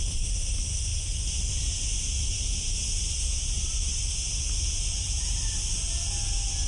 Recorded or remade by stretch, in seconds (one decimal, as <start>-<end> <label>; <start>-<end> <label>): 0.0-6.7 recorded